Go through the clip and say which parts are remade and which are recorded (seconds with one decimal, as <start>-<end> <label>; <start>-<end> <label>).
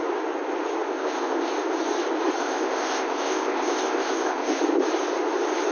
0.0-0.9 recorded; 0.9-1.5 remade; 1.5-2.4 recorded; 2.4-4.6 remade; 4.6-5.7 recorded